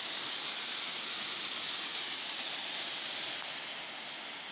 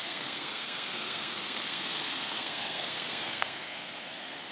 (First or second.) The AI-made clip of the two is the second